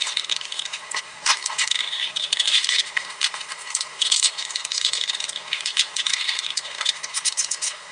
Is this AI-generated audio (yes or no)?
yes